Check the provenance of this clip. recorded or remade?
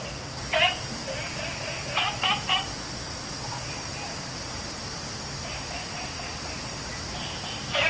recorded